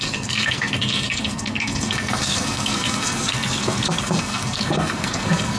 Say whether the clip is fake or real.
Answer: fake